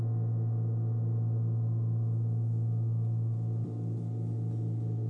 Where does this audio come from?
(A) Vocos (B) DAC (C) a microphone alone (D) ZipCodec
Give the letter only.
C